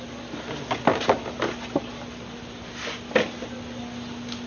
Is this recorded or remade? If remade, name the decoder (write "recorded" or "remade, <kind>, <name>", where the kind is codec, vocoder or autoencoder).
recorded